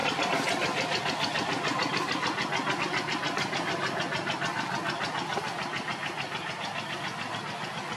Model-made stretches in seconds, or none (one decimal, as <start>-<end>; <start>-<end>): none